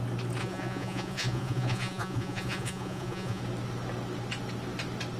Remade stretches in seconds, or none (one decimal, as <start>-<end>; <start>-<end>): 0.4-3.4